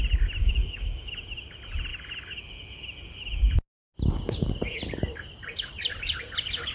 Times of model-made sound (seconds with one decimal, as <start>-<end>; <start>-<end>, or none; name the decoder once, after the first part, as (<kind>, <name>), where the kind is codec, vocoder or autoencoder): 0.4-1.1 (codec, DAC)